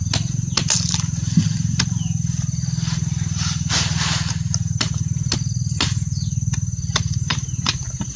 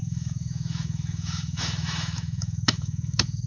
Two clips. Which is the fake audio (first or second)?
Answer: second